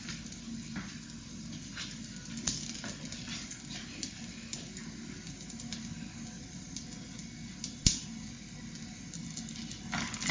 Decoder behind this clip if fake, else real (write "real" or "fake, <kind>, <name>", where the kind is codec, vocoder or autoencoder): real